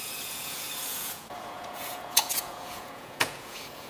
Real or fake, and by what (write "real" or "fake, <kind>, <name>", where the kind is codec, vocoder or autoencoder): fake, vocoder, Vocos